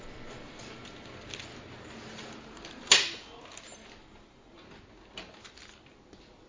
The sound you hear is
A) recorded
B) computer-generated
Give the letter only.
A